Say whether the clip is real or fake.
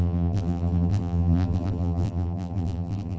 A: fake